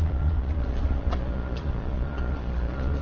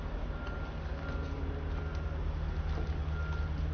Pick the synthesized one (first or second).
first